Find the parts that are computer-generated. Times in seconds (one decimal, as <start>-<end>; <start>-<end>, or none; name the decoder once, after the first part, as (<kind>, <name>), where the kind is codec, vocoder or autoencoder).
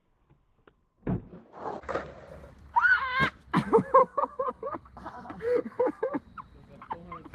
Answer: 4.0-6.2 (codec, SNAC)